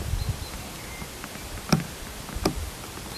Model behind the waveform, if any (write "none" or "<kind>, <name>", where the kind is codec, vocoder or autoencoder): none